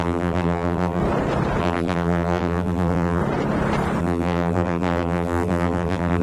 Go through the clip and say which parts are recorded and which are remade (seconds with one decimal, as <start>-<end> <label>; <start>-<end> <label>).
0.0-1.0 remade; 1.0-1.6 recorded; 1.6-3.2 remade; 3.2-4.0 recorded; 4.0-6.2 remade